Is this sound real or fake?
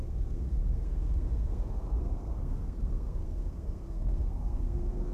fake